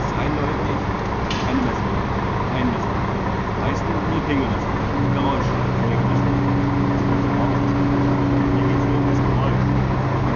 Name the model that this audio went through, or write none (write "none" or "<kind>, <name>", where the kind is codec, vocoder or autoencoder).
none